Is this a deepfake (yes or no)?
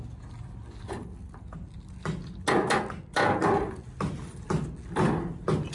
no